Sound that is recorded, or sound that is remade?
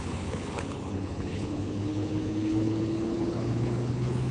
remade